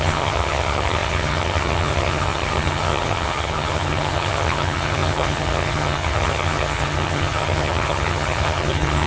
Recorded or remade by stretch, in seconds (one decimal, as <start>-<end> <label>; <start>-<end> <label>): 0.0-9.1 remade